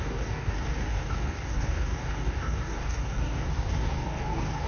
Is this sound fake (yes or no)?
yes